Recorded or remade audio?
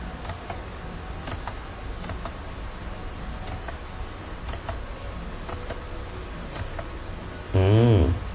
recorded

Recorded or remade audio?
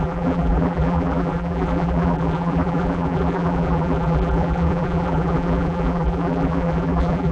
remade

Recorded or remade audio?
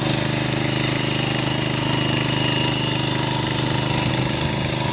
recorded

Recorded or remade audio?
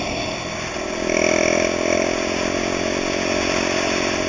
recorded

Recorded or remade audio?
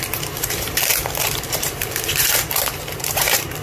remade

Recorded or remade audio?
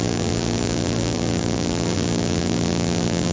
remade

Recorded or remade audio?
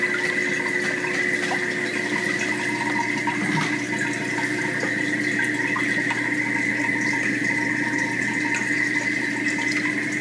recorded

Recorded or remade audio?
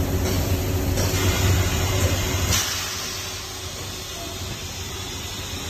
recorded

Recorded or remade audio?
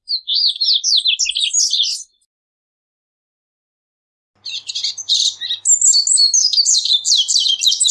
recorded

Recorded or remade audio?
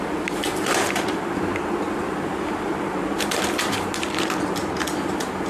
recorded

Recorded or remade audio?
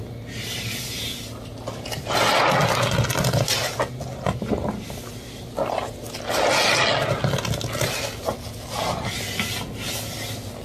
recorded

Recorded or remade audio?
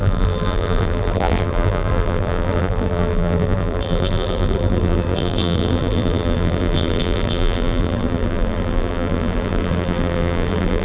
remade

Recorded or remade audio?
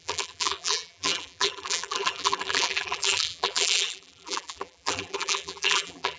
remade